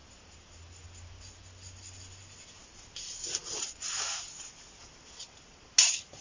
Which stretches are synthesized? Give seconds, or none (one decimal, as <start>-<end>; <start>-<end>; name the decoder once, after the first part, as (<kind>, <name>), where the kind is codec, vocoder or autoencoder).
none